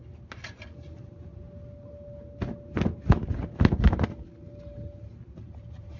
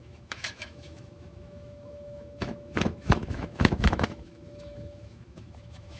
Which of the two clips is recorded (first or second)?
first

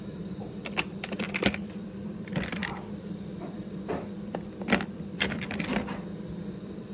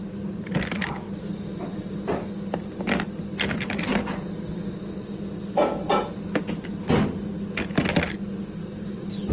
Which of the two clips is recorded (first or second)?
second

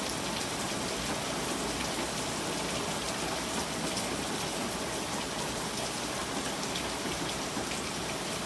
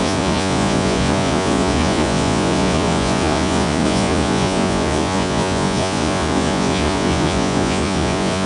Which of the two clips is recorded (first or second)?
first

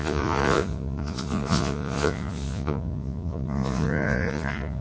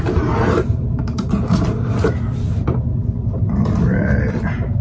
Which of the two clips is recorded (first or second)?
second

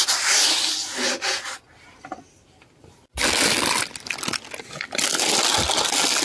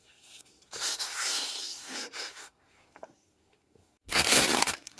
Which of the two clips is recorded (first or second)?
first